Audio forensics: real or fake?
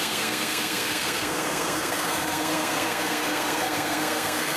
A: fake